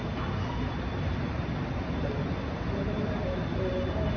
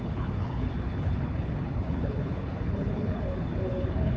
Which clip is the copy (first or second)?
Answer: second